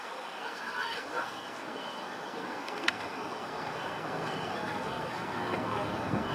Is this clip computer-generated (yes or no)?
yes